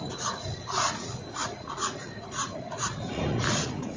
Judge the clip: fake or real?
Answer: fake